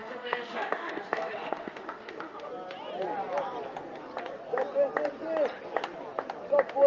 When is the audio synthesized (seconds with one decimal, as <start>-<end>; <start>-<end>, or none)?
0.0-2.5